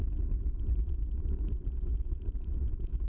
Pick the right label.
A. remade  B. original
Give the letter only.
B